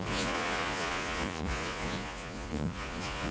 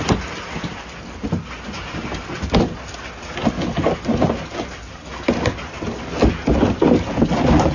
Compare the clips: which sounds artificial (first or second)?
first